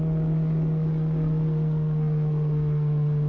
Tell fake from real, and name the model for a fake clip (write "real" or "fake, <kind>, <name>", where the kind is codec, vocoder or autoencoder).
fake, codec, SNAC